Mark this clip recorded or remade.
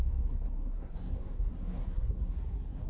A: remade